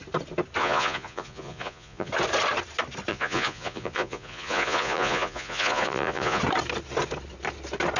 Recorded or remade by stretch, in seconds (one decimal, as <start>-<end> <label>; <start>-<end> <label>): 0.0-0.6 recorded; 0.6-2.1 remade; 2.1-3.1 recorded; 3.1-6.4 remade; 6.4-8.0 recorded